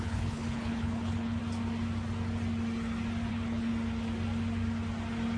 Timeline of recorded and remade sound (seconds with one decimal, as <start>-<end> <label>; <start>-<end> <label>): 0.0-1.4 remade; 1.4-3.3 recorded; 3.3-3.7 remade; 3.7-5.4 recorded

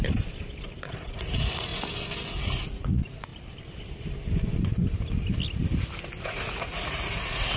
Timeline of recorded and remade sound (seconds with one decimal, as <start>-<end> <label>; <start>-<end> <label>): 0.0-0.9 recorded; 0.9-1.7 remade; 1.7-2.4 recorded; 2.4-3.3 remade; 3.3-6.2 recorded; 6.2-7.6 remade

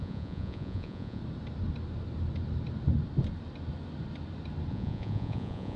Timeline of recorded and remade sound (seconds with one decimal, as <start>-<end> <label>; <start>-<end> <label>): 0.0-1.2 remade; 1.2-4.7 recorded; 4.7-5.8 remade

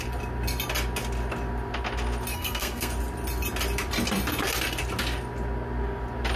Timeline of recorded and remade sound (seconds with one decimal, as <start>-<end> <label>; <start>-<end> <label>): 0.0-2.3 recorded; 2.3-2.9 remade; 2.9-6.4 recorded

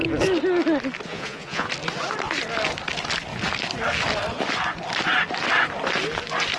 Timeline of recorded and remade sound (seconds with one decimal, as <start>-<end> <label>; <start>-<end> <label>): 0.0-1.1 recorded; 1.1-1.7 remade; 1.7-6.6 recorded

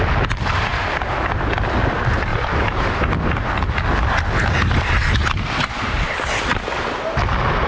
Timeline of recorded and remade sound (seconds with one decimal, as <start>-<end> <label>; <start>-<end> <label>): 0.0-2.3 recorded; 2.3-3.0 remade; 3.0-7.7 recorded

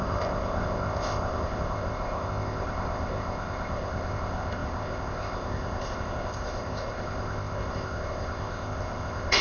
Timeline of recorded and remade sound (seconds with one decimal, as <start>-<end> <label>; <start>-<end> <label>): 0.0-9.4 remade